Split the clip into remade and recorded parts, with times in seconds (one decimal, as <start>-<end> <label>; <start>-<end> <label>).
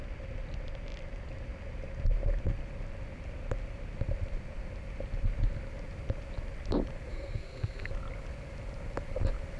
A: 0.0-7.1 recorded; 7.1-7.9 remade; 7.9-9.6 recorded